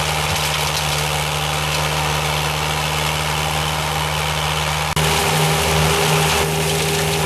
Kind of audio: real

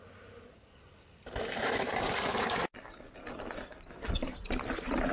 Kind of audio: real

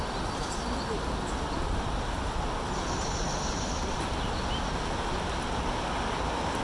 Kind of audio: real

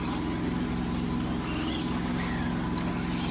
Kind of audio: real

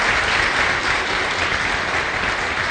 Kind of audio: real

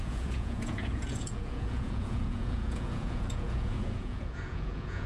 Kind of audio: fake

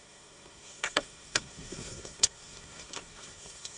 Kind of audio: fake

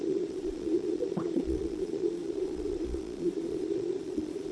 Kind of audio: fake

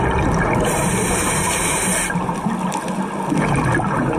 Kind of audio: real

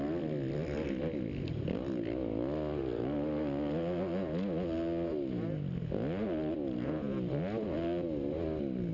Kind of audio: real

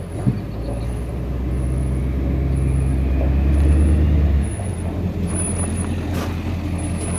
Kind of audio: real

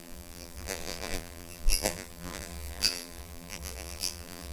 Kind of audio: fake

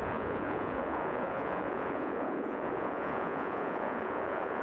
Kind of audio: fake